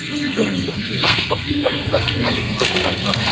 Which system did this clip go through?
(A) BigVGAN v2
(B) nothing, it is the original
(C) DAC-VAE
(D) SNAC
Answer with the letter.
D